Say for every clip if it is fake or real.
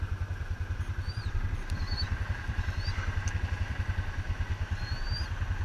fake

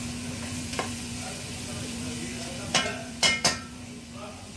fake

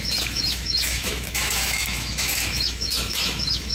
fake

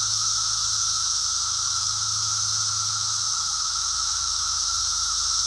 fake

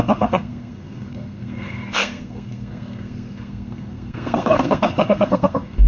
fake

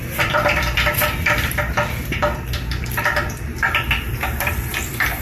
fake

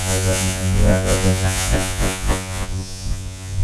fake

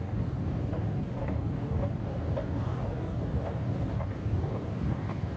fake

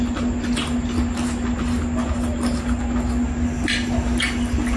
real